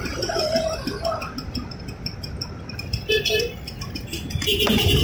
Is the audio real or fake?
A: real